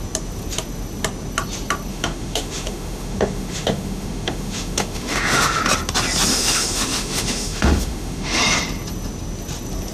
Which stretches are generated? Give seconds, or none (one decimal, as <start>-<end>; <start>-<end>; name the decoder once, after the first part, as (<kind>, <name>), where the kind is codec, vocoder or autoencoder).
1.9-5.6 (autoencoder, DAC-VAE); 6.3-8.4